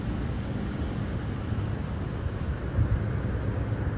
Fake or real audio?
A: real